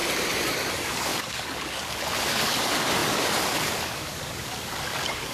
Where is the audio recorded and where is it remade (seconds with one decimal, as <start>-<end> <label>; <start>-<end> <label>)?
0.0-0.7 recorded; 0.7-5.3 remade